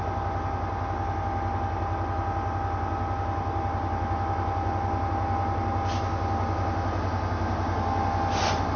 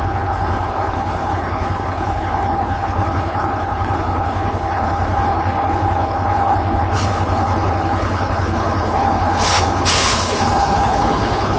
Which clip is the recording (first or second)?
first